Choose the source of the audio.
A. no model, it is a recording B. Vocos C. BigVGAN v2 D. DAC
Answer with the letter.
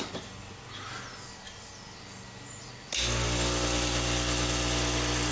A